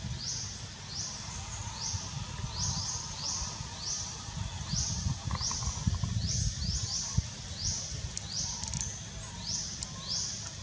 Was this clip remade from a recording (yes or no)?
no